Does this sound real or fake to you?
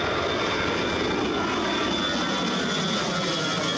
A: real